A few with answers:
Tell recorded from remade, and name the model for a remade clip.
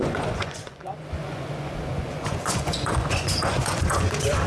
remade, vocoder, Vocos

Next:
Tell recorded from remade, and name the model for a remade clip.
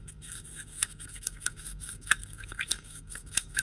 remade, codec, SNAC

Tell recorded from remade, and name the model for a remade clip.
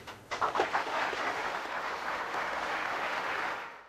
remade, autoencoder, DAC-VAE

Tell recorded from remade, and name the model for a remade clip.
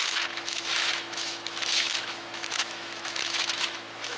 remade, autoencoder, DAC-VAE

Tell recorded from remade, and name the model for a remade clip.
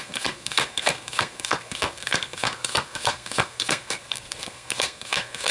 remade, codec, SNAC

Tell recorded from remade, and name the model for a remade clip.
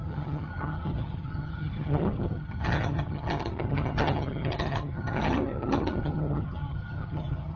remade, vocoder, HiFi-GAN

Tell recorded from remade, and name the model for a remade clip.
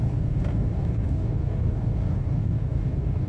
remade, codec, DAC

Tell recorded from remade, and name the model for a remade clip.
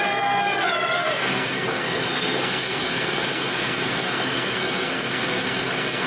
remade, codec, SNAC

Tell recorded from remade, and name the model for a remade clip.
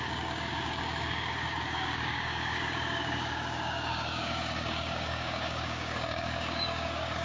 remade, codec, DAC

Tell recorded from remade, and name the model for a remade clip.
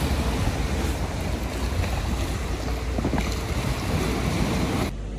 recorded